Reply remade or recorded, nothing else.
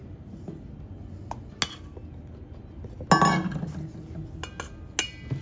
recorded